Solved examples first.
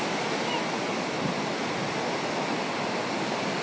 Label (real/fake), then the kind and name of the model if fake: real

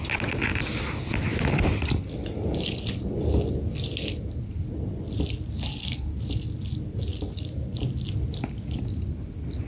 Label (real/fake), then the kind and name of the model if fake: real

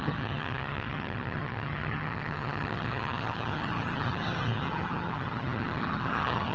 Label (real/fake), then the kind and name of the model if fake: fake, vocoder, HiFi-GAN